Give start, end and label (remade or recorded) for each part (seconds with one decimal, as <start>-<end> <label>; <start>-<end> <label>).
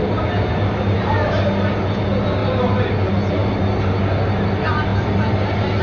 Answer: 0.0-2.4 recorded; 2.4-2.9 remade; 2.9-4.9 recorded; 4.9-5.8 remade